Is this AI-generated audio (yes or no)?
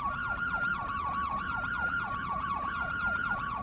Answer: yes